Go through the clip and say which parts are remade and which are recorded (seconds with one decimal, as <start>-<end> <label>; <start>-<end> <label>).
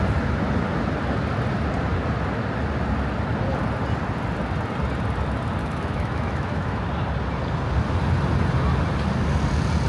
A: 0.0-5.6 recorded; 5.6-6.9 remade; 6.9-9.9 recorded